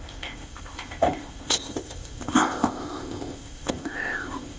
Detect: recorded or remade remade